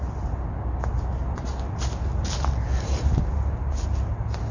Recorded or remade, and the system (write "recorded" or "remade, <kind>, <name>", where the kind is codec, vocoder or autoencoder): recorded